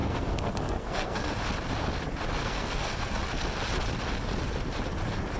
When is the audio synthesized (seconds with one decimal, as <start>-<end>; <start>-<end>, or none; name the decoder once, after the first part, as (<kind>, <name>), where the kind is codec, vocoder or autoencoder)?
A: 0.0-1.3 (codec, SNAC); 2.4-3.2